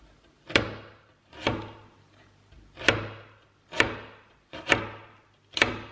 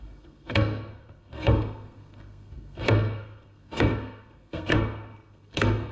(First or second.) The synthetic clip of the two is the second